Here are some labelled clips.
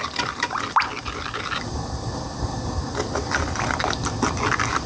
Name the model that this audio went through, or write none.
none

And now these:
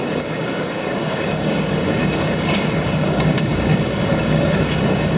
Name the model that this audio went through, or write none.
codec, DAC